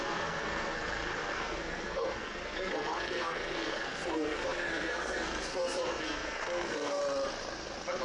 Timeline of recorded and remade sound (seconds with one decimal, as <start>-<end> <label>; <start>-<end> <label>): 0.0-7.0 remade; 7.0-8.0 recorded